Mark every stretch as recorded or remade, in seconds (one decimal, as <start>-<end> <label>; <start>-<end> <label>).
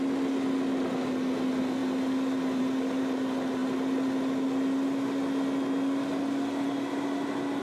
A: 0.0-7.6 recorded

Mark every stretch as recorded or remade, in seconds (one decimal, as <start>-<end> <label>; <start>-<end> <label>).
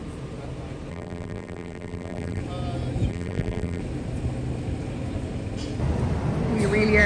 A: 0.0-0.9 recorded; 0.9-2.4 remade; 2.4-3.1 recorded; 3.1-3.8 remade; 3.8-7.1 recorded